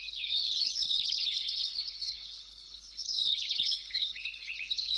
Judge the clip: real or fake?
fake